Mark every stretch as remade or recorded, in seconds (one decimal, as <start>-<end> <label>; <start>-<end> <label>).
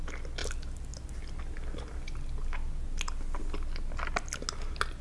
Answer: 0.0-5.0 recorded